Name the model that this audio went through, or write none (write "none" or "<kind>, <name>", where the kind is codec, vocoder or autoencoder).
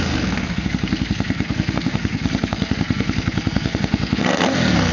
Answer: codec, SNAC